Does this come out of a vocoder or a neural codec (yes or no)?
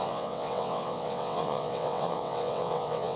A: yes